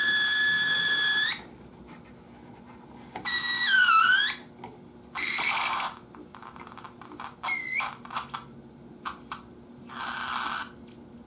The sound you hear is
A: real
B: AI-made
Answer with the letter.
A